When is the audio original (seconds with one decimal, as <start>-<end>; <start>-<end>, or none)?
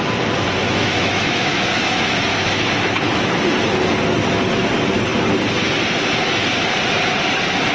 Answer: 0.0-0.6; 3.4-7.7